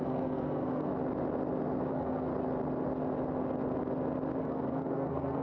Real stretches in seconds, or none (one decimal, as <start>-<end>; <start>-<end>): 0.9-1.9; 2.3-4.4